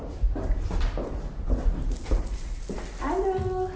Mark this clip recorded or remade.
recorded